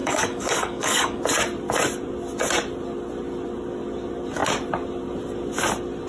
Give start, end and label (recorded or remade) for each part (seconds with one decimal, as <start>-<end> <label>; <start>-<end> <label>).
0.0-1.2 remade; 1.2-6.1 recorded